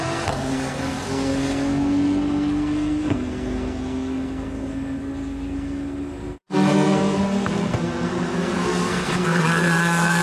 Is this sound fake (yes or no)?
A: yes